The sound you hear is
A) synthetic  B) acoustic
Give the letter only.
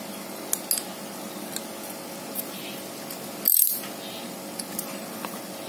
B